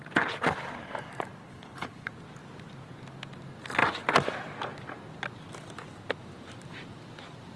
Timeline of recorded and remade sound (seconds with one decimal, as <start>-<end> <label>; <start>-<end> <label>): 0.0-1.4 recorded; 1.4-2.1 remade; 2.1-7.6 recorded